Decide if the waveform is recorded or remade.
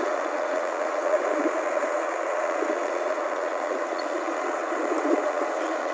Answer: remade